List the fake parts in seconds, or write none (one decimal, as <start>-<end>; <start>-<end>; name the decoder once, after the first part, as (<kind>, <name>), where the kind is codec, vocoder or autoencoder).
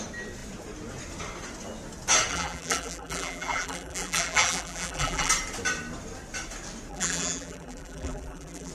2.3-5.3 (vocoder, BigVGAN v2); 6.9-8.7